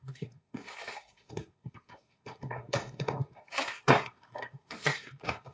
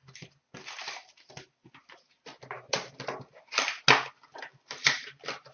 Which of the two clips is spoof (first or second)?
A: first